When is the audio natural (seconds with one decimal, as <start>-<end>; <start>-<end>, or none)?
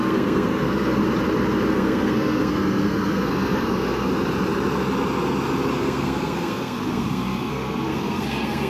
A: 1.0-1.7; 4.1-5.7